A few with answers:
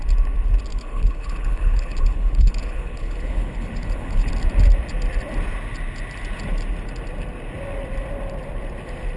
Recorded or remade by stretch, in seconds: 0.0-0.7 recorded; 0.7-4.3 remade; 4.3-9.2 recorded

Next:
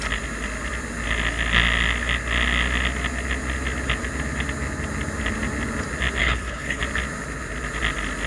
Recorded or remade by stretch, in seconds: 0.0-6.2 recorded; 6.2-6.8 remade; 6.8-8.3 recorded

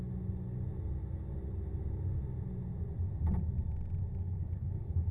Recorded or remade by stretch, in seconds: 0.0-4.2 recorded; 4.2-5.1 remade

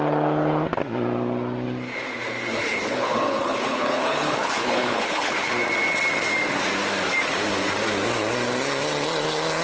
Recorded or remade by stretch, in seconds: 0.0-2.6 recorded; 2.6-5.5 remade; 5.5-9.6 recorded

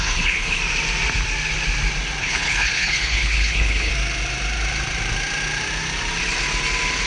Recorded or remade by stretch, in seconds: 0.0-0.6 remade; 0.6-2.2 recorded; 2.2-3.9 remade; 3.9-7.1 recorded

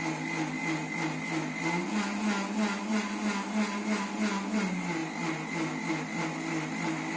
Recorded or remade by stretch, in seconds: 0.0-7.2 recorded

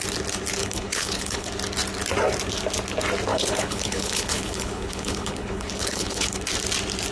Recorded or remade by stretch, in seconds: 0.0-0.6 recorded; 0.6-1.5 remade; 1.5-3.3 recorded; 3.3-6.4 remade; 6.4-7.1 recorded